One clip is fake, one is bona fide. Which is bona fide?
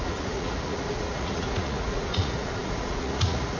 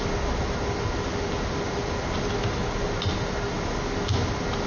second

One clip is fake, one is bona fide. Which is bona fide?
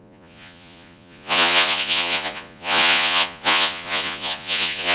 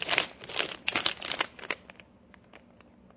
second